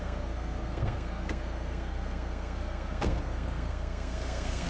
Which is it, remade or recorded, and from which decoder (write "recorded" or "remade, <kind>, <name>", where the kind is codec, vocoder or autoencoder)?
remade, codec, SNAC